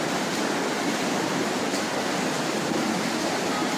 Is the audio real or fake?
fake